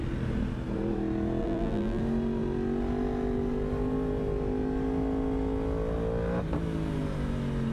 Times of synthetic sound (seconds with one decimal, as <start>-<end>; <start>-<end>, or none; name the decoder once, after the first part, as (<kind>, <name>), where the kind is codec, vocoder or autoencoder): 1.4-2.0 (vocoder, BigVGAN v2)